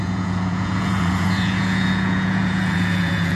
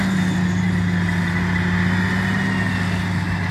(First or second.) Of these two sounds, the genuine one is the second